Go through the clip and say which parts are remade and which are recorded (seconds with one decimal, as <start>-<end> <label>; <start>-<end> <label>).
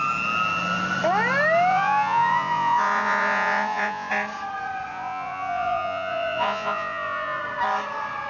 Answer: 0.0-1.7 recorded; 1.7-4.1 remade; 4.1-4.9 recorded; 4.9-7.4 remade; 7.4-8.3 recorded